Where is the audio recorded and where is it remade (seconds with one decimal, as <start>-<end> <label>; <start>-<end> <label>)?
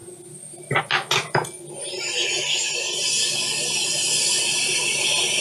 0.0-5.4 recorded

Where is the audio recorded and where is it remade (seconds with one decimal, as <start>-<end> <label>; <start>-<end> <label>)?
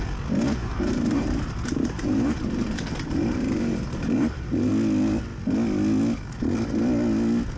0.0-0.6 recorded; 0.6-4.7 remade; 4.7-7.6 recorded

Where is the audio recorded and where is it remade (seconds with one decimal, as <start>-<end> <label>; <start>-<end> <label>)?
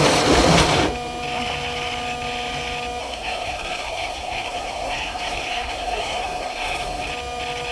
0.0-3.0 recorded; 3.0-7.1 remade; 7.1-7.7 recorded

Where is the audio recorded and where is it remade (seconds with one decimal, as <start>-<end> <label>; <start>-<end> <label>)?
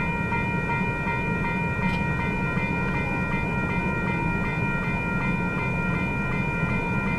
0.0-7.2 recorded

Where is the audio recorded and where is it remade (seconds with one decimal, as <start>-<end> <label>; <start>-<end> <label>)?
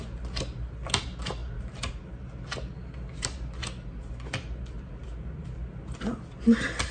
0.0-6.9 recorded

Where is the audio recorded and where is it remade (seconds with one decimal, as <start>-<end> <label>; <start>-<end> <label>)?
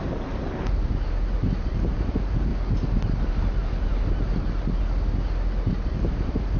0.0-2.5 remade; 2.5-5.7 recorded; 5.7-6.6 remade